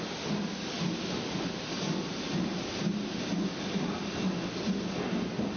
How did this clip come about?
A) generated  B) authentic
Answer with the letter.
B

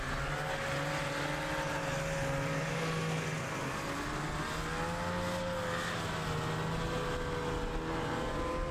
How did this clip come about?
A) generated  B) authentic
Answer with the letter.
B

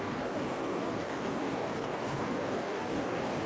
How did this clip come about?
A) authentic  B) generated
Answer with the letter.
B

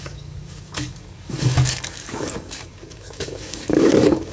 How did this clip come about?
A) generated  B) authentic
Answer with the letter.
A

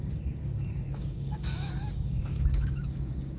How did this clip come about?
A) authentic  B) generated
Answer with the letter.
B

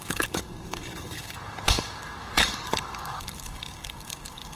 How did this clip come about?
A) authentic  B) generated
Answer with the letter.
B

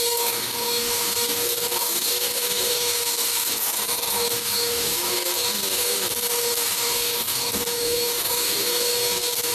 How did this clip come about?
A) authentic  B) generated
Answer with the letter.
B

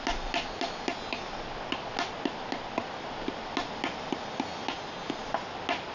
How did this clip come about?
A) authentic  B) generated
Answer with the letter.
A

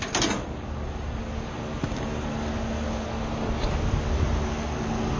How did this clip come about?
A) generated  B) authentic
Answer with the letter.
B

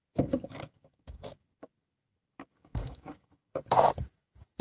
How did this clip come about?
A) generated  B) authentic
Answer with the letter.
A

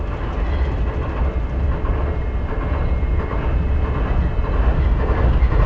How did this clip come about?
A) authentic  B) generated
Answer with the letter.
A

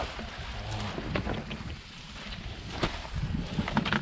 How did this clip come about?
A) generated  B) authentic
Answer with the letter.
B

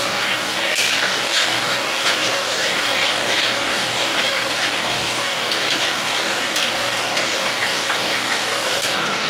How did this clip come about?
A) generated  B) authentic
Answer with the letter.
A